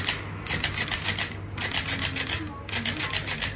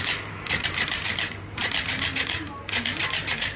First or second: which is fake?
second